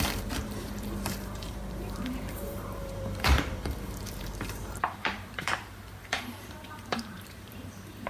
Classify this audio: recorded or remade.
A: remade